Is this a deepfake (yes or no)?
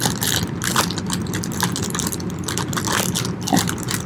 no